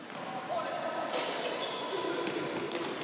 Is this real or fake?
real